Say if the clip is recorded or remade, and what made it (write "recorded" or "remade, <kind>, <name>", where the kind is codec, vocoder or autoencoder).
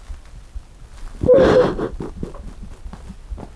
recorded